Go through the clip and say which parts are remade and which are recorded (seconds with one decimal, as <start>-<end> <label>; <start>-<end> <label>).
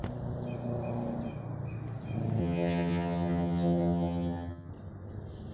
0.0-2.4 recorded; 2.4-4.7 remade; 4.7-5.5 recorded